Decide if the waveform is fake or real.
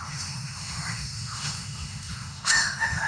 fake